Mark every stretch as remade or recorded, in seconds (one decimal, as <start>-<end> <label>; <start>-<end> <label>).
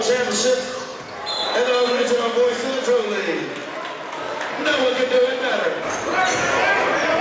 0.0-0.9 recorded; 0.9-1.9 remade; 1.9-7.2 recorded